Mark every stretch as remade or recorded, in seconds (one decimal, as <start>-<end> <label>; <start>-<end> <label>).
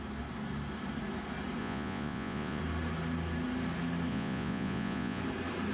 0.0-1.6 recorded; 1.6-2.6 remade; 2.6-4.1 recorded; 4.1-5.2 remade; 5.2-5.7 recorded